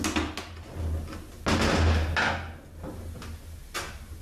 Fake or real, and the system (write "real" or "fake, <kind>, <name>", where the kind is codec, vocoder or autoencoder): real